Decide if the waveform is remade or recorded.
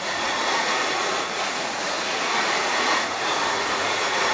remade